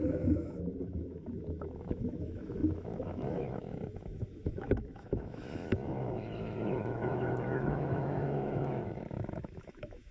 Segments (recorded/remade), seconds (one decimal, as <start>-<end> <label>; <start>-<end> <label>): 0.0-10.1 remade